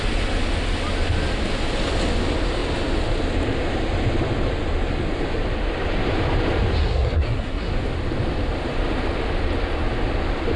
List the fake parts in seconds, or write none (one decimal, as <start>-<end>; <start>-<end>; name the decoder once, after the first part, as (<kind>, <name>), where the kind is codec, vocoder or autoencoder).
6.8-7.7 (codec, SNAC)